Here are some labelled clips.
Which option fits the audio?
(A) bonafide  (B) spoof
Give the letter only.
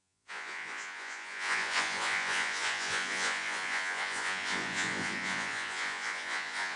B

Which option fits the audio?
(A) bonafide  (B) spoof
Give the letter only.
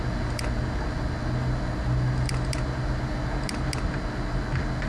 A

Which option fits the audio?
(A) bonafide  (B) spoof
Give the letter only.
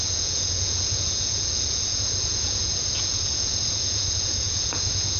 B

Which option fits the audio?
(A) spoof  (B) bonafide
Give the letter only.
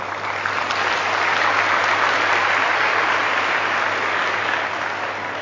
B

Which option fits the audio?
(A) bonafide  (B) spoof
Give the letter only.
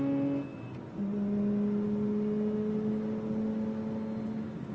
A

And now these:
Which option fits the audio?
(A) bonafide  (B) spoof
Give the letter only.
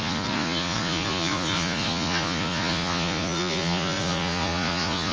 B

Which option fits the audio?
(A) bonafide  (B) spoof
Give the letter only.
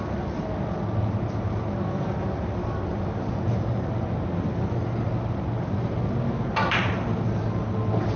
A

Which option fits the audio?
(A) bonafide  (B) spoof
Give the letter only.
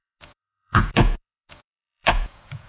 B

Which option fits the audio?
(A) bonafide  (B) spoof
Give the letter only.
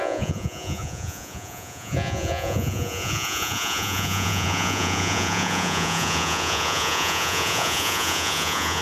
B